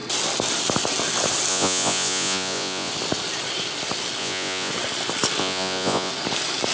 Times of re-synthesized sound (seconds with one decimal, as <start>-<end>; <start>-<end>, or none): 1.5-2.9; 4.2-4.7; 5.4-6.1